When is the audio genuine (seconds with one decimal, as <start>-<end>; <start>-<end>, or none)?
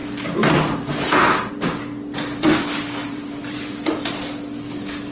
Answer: 1.5-3.0; 4.1-5.1